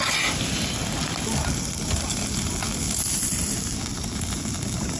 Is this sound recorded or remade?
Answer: recorded